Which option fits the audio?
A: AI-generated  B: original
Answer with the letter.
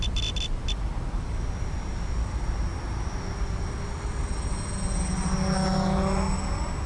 B